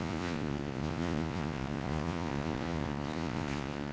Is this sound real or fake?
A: fake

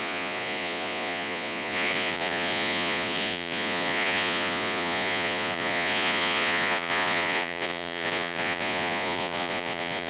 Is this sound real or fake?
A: fake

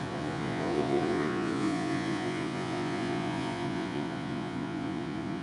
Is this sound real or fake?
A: fake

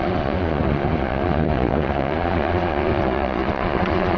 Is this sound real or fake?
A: fake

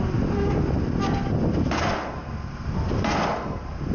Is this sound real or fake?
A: real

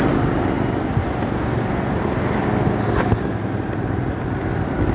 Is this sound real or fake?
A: real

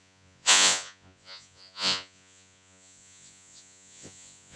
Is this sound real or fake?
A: fake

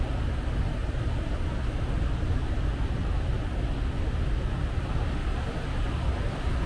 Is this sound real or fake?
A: real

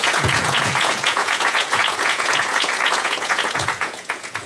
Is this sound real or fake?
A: fake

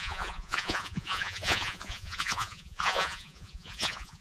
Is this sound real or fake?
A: fake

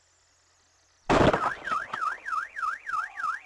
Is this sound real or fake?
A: real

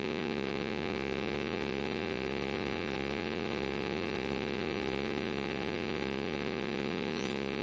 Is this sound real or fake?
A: fake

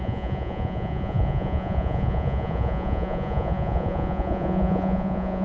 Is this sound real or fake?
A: fake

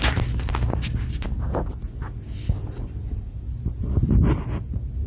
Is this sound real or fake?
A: real